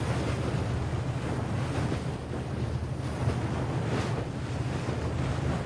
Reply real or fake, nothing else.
real